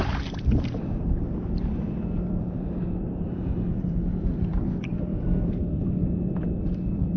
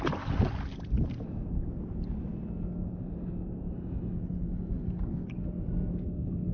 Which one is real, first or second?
second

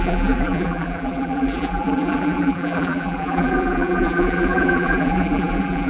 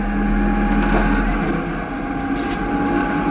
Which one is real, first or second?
second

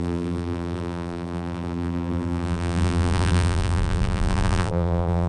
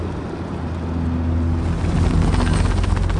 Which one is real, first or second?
second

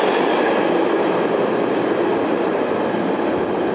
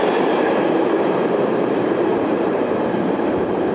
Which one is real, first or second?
first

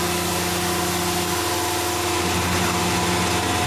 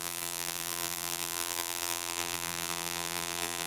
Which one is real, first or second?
first